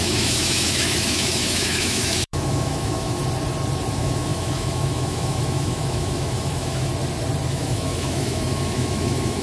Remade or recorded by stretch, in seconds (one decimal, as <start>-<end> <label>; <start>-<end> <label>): 0.0-3.2 remade; 3.2-3.9 recorded; 3.9-6.9 remade; 6.9-7.5 recorded; 7.5-9.4 remade